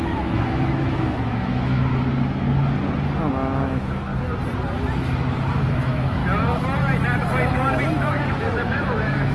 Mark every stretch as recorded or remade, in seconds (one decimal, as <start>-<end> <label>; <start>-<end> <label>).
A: 0.0-1.9 remade; 1.9-3.3 recorded; 3.3-4.1 remade; 4.1-5.7 recorded; 5.7-6.2 remade; 6.2-8.3 recorded; 8.3-9.3 remade